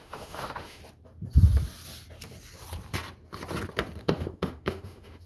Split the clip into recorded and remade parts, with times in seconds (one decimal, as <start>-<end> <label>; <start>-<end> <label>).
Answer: 0.0-0.8 remade; 0.8-4.0 recorded; 4.0-5.3 remade